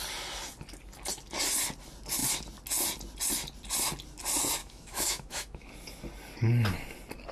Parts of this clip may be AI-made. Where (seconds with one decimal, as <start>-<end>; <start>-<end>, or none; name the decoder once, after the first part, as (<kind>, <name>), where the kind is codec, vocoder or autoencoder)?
4.6-5.7 (autoencoder, DAC-VAE)